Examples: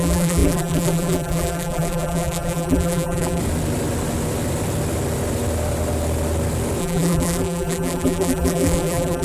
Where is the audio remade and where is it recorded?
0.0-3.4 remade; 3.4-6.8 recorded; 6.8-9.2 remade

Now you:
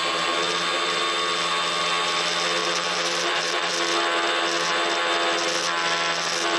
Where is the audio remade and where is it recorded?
0.0-2.6 recorded; 2.6-3.7 remade; 3.7-6.6 recorded

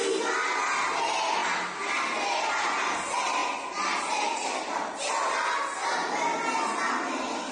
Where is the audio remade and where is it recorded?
0.0-3.4 recorded; 3.4-5.3 remade; 5.3-7.5 recorded

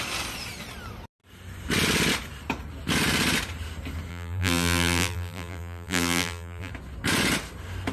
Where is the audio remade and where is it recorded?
0.0-4.1 recorded; 4.1-6.7 remade; 6.7-7.9 recorded

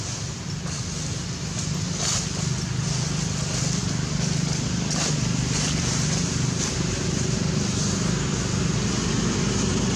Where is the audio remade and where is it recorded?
0.0-10.0 recorded

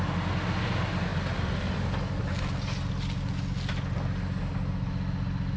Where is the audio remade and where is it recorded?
0.0-5.6 recorded